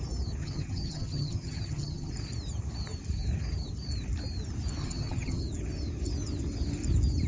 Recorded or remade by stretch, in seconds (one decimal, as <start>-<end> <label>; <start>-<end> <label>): 0.0-0.4 recorded; 0.4-2.1 remade; 2.1-4.8 recorded; 4.8-5.4 remade; 5.4-7.3 recorded